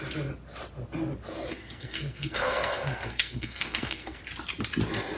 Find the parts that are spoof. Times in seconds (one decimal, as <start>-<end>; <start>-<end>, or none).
1.5-4.2